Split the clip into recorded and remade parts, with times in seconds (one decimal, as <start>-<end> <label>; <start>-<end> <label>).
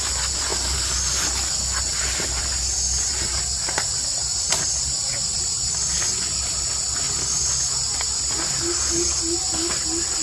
0.0-4.3 recorded; 4.3-5.4 remade; 5.4-10.2 recorded